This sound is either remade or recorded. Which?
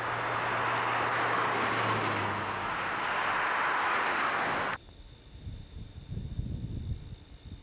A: recorded